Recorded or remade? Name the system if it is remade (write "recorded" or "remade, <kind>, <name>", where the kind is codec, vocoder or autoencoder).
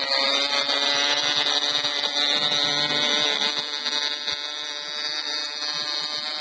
recorded